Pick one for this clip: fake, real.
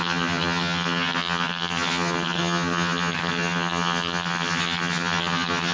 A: fake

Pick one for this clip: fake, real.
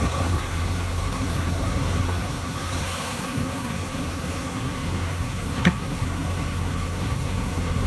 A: fake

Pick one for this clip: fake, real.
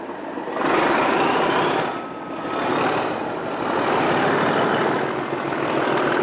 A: real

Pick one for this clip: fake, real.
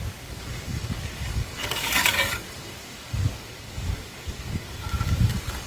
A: fake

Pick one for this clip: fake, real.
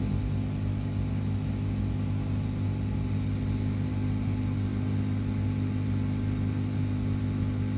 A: real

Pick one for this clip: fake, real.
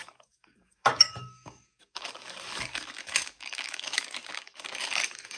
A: fake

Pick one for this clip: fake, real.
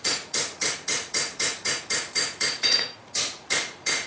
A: fake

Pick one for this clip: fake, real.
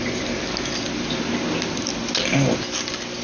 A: real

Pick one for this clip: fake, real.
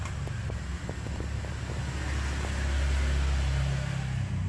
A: real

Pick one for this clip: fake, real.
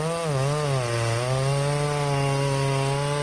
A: real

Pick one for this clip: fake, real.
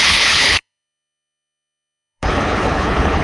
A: fake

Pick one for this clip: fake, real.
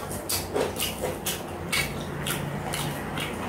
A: real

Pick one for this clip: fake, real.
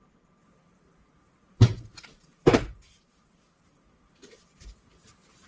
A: fake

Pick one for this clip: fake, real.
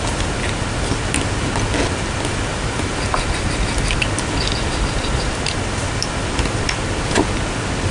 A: real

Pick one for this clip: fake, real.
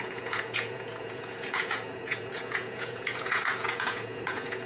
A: fake